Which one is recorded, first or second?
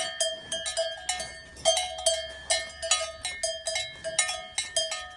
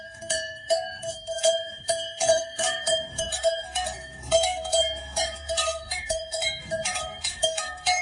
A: first